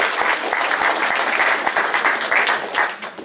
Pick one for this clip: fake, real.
real